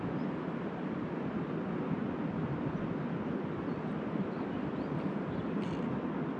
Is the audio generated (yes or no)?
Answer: no